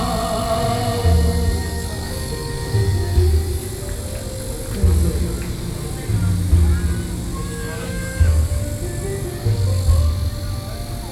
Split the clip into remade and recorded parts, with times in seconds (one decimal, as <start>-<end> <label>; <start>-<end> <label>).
0.0-1.6 recorded; 1.6-3.7 remade; 3.7-7.4 recorded; 7.4-8.6 remade; 8.6-11.1 recorded